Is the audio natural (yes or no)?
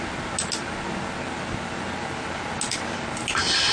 yes